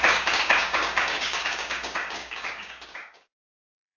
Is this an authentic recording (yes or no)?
no